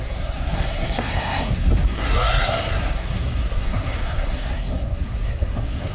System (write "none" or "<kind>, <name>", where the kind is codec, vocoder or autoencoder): codec, SNAC